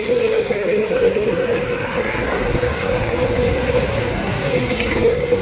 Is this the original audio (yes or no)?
no